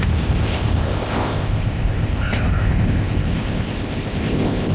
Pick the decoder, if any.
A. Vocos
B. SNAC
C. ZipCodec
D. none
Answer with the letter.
C